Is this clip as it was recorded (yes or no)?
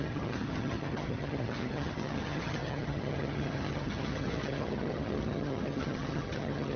no